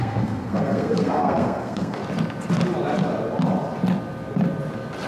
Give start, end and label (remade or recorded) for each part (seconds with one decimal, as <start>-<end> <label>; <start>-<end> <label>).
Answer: 0.0-2.0 remade; 2.0-5.1 recorded